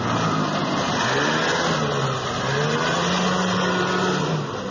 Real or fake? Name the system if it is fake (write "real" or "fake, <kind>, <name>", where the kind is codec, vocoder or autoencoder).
real